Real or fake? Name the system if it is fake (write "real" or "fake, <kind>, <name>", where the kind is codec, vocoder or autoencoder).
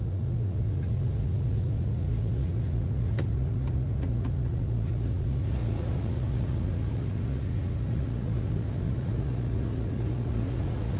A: fake, vocoder, Vocos